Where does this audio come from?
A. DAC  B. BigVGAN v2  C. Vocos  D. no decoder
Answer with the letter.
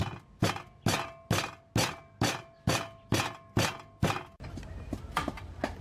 D